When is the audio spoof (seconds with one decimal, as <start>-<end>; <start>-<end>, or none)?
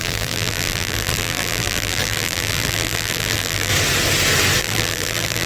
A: 0.0-3.7; 4.6-5.5